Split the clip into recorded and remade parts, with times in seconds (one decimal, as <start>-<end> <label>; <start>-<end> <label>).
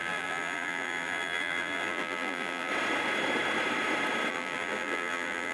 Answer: 0.0-2.7 remade; 2.7-4.3 recorded; 4.3-5.5 remade